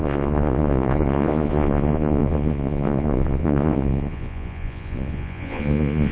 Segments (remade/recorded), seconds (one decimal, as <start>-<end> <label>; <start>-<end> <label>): 0.0-6.1 remade